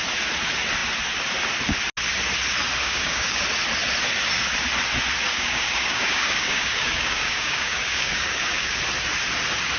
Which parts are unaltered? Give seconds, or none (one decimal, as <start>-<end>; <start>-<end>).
0.0-2.8; 3.4-5.3; 8.8-9.8